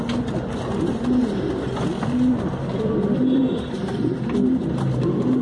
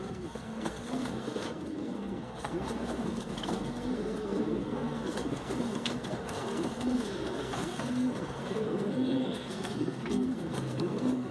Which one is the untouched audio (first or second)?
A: first